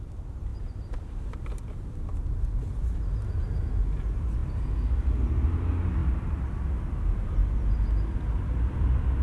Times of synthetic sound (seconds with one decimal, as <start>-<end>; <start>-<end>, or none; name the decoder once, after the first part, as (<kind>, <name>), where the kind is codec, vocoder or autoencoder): 0.5-1.9 (vocoder, BigVGAN v2); 4.4-5.1; 7.4-9.2